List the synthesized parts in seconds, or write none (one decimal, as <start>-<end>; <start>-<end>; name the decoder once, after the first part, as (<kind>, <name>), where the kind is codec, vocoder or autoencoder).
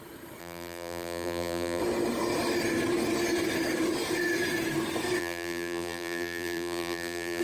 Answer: 0.4-1.8 (vocoder, BigVGAN v2); 5.2-7.4